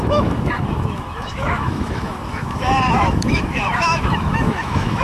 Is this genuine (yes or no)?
no